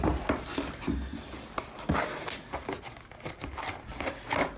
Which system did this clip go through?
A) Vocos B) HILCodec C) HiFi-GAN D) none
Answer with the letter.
D